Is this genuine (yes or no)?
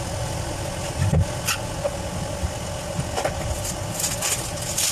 yes